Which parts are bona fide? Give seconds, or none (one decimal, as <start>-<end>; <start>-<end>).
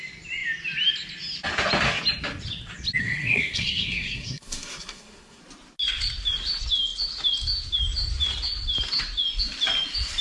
0.0-3.0; 5.4-10.2